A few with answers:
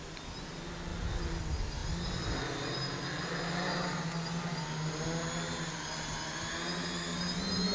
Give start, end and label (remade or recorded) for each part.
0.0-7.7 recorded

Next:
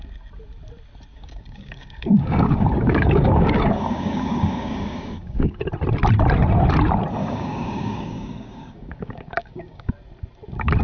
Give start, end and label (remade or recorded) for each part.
0.0-1.1 recorded; 1.1-5.6 remade; 5.6-7.2 recorded; 7.2-9.9 remade; 9.9-10.8 recorded